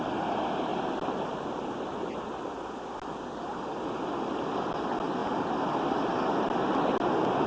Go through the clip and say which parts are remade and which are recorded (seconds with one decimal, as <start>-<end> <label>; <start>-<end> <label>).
0.0-7.5 recorded